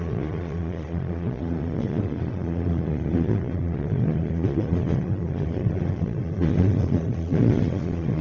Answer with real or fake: fake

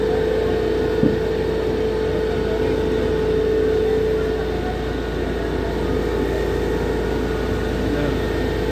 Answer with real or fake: real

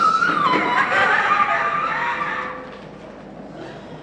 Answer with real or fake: real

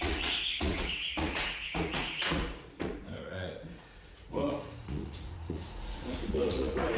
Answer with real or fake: fake